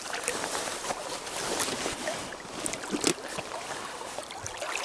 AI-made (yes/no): no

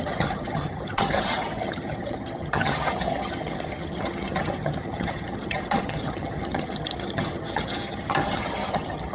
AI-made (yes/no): yes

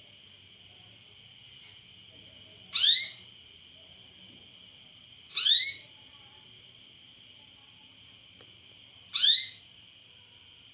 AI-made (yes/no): no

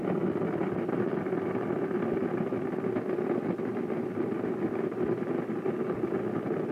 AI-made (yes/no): no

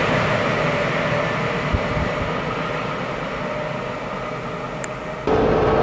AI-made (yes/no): no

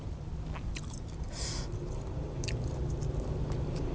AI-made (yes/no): yes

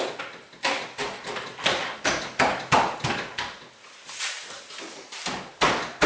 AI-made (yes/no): no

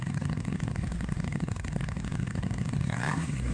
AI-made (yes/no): yes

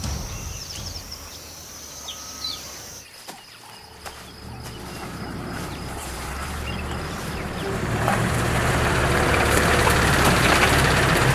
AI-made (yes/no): yes